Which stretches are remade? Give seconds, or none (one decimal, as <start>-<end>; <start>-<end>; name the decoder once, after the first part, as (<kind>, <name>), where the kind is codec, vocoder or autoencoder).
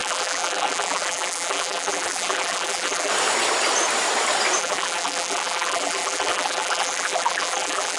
0.0-3.1 (vocoder, BigVGAN v2); 4.6-8.0